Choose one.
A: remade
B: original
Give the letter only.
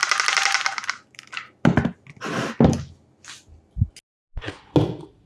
B